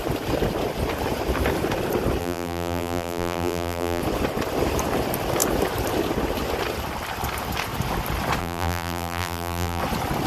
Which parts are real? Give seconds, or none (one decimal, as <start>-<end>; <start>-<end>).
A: 0.0-2.2; 4.0-8.4; 9.8-10.3